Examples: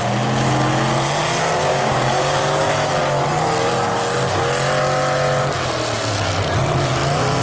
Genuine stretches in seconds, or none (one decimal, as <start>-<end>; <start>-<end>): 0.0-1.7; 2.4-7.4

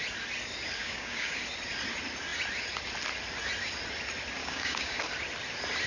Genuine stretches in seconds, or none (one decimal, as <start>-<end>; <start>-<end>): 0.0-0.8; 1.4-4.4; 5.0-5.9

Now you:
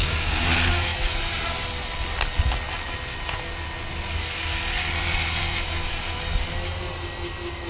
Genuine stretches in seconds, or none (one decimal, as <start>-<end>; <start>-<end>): 0.5-7.7

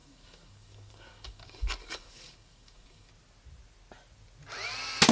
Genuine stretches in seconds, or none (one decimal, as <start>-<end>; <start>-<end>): 3.1-5.1